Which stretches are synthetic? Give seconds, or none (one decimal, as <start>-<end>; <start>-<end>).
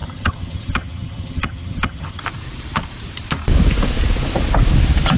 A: 0.0-2.2